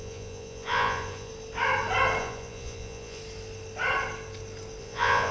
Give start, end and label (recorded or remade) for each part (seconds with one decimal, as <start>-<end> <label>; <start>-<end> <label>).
0.0-1.3 remade; 1.3-2.2 recorded; 2.2-3.2 remade; 3.2-4.8 recorded; 4.8-5.3 remade